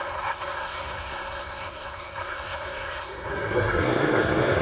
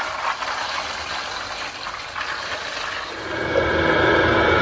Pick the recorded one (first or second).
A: second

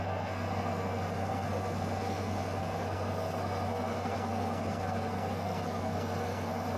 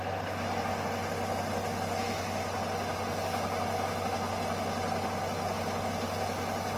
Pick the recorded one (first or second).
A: second